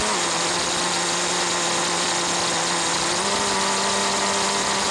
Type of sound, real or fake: real